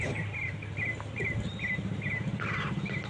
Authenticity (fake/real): real